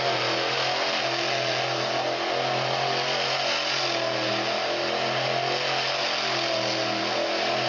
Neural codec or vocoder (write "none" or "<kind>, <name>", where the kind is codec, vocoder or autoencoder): none